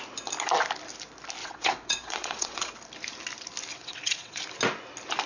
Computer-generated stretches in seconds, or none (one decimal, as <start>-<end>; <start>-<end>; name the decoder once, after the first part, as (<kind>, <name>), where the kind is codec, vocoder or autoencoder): 1.4-2.7 (vocoder, WaveNeXt); 3.7-4.4